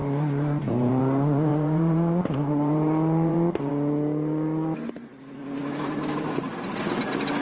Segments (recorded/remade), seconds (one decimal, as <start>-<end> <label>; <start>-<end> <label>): 0.0-1.0 remade; 1.0-1.5 recorded; 1.5-3.7 remade; 3.7-5.6 recorded; 5.6-6.5 remade; 6.5-7.4 recorded

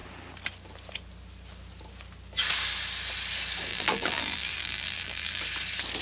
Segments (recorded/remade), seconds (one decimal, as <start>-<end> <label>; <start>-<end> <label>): 0.0-3.7 recorded; 3.7-5.4 remade; 5.4-6.0 recorded